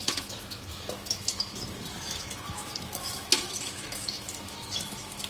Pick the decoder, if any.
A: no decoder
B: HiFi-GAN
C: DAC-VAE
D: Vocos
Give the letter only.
C